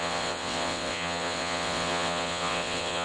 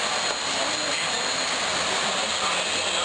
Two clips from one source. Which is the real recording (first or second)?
second